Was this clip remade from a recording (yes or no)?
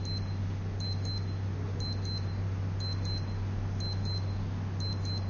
no